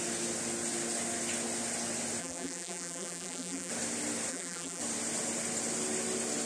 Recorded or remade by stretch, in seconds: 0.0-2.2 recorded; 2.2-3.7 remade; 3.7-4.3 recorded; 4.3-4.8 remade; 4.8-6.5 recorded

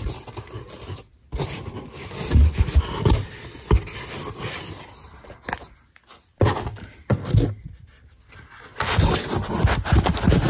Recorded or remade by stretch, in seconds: 0.0-10.5 recorded

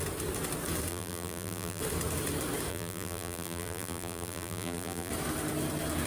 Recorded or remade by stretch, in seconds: 0.0-0.9 recorded; 0.9-1.8 remade; 1.8-2.7 recorded; 2.7-5.1 remade; 5.1-6.1 recorded